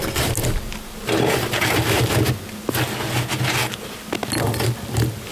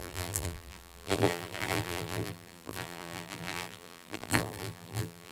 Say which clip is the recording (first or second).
first